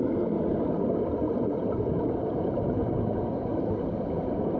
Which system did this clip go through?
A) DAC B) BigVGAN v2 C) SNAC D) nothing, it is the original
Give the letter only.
D